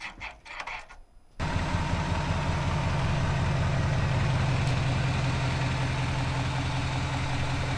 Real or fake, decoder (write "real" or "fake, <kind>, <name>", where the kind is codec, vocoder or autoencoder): real